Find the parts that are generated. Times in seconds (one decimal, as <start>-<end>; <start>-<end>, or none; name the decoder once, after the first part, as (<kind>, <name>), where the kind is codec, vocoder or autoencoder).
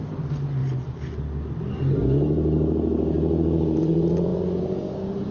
none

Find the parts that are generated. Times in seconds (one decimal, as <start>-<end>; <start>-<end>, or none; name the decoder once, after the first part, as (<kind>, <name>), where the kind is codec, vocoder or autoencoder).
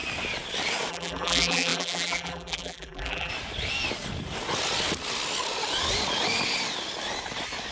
0.9-3.3 (vocoder, BigVGAN v2)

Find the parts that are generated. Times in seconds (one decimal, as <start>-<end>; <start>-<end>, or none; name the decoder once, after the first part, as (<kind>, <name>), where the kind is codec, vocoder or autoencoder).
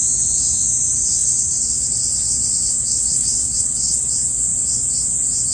1.2-2.0 (vocoder, WaveNeXt); 2.8-4.1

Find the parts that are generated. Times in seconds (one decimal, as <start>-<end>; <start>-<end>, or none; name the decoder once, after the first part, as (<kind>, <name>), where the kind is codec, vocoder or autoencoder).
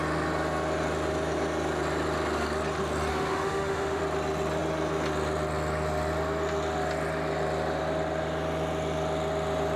3.1-4.0 (autoencoder, DAC-VAE)